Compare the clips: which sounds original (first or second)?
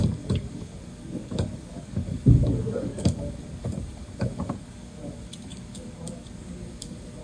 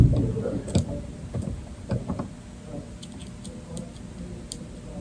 second